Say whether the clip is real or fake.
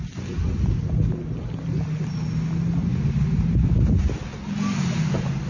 real